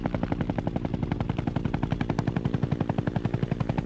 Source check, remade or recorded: recorded